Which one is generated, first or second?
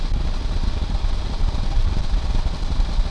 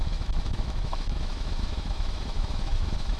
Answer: second